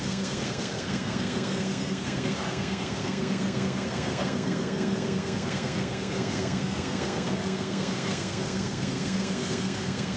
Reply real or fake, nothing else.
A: fake